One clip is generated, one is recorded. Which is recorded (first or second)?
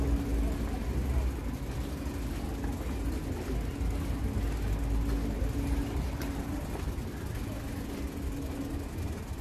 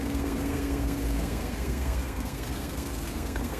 first